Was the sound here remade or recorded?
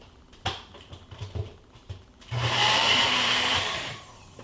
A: remade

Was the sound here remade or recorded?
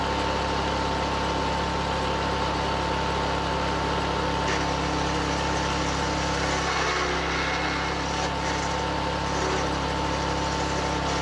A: recorded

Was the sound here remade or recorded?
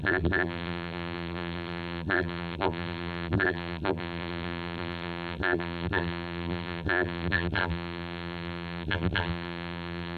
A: remade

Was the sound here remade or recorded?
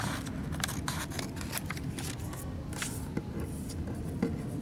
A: recorded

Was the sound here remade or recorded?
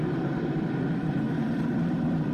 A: remade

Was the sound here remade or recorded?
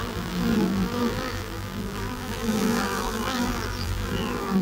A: remade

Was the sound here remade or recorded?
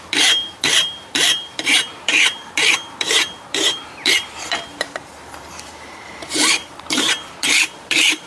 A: remade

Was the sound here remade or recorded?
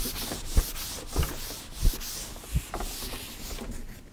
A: recorded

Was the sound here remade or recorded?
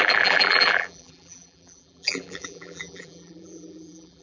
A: remade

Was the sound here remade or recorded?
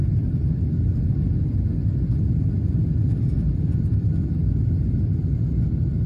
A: recorded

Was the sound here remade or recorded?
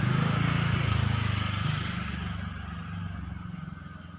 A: recorded